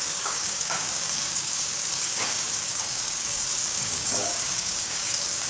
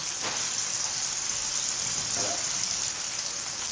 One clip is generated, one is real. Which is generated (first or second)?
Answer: first